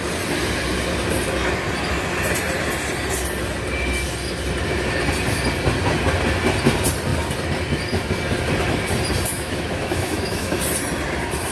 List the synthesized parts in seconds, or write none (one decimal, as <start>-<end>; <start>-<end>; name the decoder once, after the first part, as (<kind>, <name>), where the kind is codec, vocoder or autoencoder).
9.3-10.6 (autoencoder, DAC-VAE)